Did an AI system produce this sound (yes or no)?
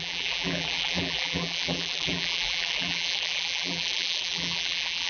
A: yes